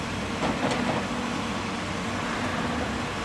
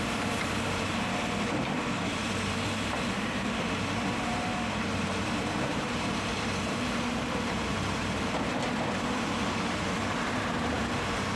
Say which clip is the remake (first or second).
second